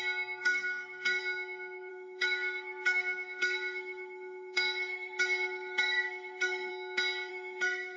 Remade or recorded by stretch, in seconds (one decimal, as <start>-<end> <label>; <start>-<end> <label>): 0.0-0.4 recorded; 0.4-1.2 remade; 1.2-1.9 recorded; 1.9-6.7 remade; 6.7-7.3 recorded; 7.3-8.0 remade